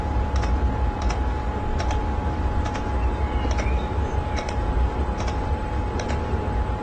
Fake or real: fake